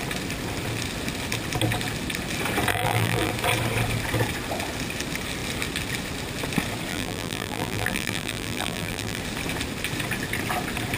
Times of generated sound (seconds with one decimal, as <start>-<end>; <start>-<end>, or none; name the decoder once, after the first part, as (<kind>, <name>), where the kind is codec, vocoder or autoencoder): 2.7-3.3 (vocoder, BigVGAN v2); 6.9-9.2